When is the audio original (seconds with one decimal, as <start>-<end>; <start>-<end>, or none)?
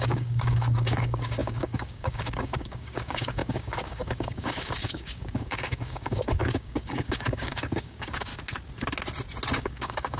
8.3-9.5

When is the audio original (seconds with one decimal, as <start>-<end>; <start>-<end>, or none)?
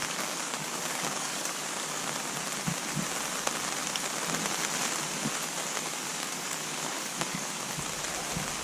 2.1-6.1; 7.7-8.6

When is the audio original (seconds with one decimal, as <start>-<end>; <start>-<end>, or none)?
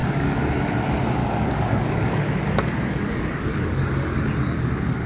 0.5-1.2; 4.3-5.1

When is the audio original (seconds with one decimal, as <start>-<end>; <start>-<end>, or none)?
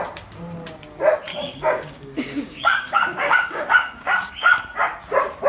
0.0-1.3; 4.6-5.5